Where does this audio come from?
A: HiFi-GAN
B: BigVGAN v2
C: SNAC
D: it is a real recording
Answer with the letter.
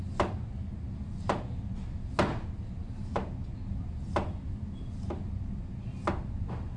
D